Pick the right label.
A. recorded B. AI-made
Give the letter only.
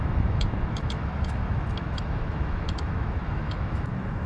B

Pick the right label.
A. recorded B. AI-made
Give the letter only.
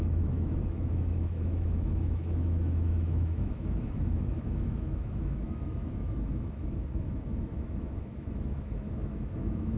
B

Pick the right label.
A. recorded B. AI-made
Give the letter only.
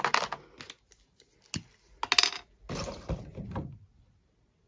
A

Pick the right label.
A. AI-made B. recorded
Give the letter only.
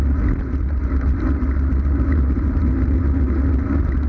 B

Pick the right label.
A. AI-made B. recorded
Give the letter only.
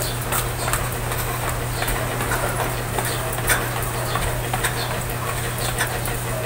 B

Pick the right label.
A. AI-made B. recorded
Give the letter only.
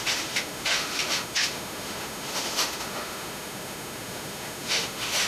A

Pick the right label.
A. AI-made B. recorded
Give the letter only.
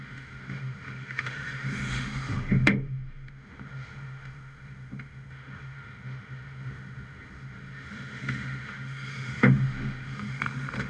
A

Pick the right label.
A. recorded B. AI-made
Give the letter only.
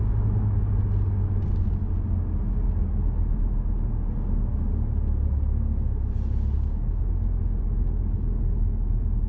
A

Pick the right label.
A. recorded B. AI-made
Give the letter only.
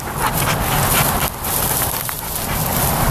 A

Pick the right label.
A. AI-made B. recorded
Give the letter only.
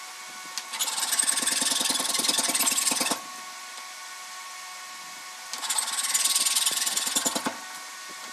B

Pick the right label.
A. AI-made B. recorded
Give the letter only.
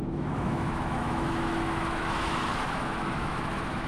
A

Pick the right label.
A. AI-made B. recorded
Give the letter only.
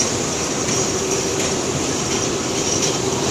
B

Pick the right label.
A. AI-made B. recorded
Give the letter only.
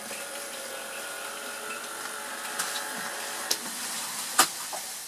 B